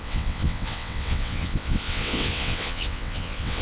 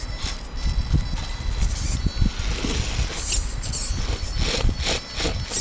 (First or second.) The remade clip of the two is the first